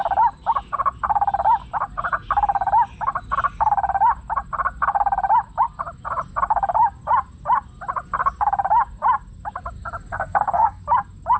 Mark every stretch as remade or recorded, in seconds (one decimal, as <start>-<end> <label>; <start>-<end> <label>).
0.0-10.1 recorded; 10.1-10.8 remade; 10.8-11.4 recorded